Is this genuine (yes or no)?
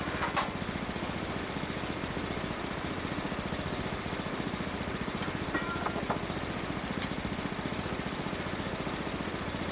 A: yes